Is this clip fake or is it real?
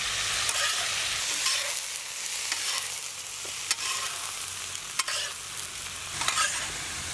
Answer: real